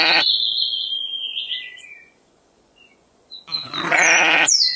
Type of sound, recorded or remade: remade